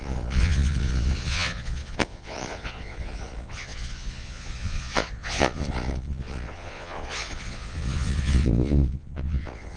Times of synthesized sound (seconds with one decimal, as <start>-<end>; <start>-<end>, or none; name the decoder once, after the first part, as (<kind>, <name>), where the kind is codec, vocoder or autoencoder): 0.0-9.8 (vocoder, Vocos)